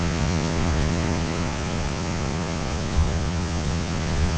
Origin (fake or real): fake